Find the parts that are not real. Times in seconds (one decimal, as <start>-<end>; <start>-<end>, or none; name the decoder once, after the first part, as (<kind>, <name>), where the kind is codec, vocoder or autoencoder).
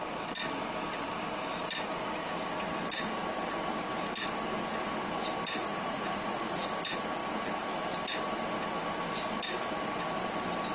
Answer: 5.6-6.7 (vocoder, Vocos)